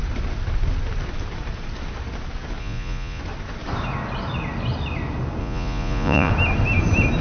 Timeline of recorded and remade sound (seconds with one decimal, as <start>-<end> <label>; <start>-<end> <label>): 0.0-2.6 recorded; 2.6-3.2 remade; 3.2-5.4 recorded; 5.4-6.3 remade; 6.3-7.2 recorded